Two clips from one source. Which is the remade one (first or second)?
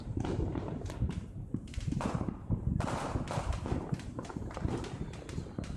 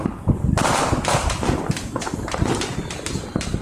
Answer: first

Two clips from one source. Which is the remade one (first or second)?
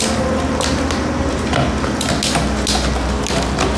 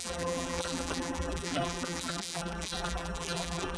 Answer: second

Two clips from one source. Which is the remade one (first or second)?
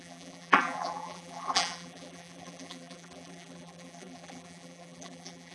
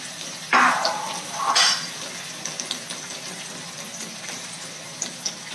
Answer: first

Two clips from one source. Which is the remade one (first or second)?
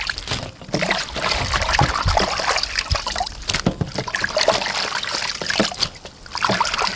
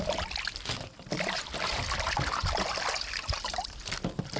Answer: second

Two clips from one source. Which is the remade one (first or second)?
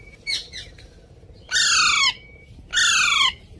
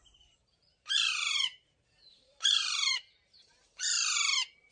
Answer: second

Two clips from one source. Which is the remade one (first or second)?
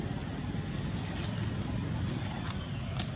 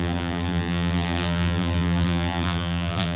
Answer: second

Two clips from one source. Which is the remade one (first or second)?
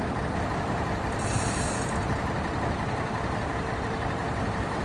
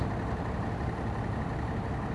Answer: first